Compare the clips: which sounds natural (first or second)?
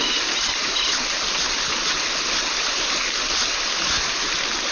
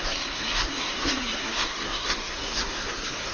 first